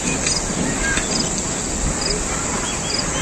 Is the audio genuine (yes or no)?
yes